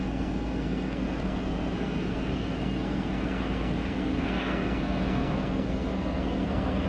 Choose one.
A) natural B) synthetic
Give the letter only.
B